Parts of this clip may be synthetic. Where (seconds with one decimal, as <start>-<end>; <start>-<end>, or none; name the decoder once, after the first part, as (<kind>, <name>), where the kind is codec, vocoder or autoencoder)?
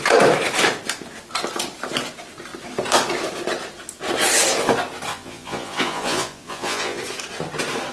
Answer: 5.1-7.0 (vocoder, Vocos)